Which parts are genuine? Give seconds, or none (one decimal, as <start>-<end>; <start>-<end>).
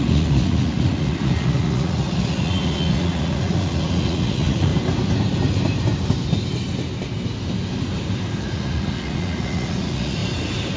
4.7-8.4; 10.2-10.8